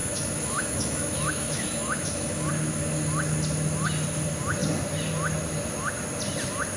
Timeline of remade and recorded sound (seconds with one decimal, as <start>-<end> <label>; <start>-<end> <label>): 0.0-2.5 remade; 2.5-6.8 recorded